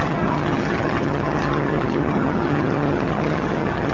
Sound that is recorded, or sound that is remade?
remade